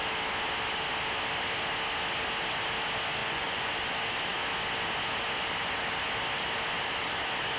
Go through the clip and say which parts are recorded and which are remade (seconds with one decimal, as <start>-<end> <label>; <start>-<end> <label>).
0.0-3.2 recorded; 3.2-3.7 remade; 3.7-7.6 recorded